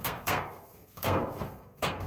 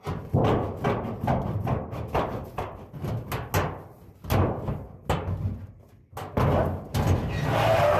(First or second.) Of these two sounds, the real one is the second